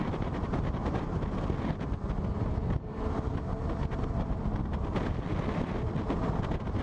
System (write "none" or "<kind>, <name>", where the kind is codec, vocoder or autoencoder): none